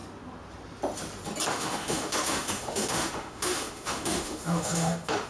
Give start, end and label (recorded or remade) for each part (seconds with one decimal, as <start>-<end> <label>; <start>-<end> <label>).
0.0-1.5 recorded; 1.5-5.3 remade